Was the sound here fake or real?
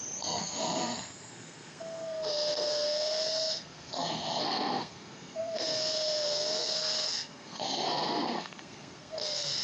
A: fake